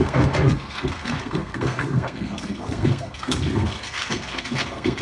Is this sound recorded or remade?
remade